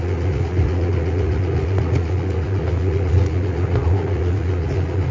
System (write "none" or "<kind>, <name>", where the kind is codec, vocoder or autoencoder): vocoder, Vocos